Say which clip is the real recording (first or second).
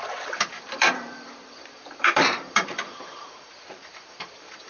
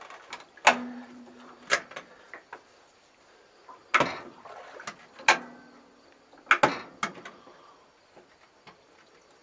second